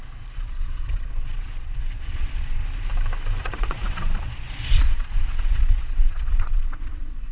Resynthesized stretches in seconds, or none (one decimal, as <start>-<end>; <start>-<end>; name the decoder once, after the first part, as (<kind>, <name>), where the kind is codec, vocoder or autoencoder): 0.0-2.6 (vocoder, Vocos); 3.4-7.3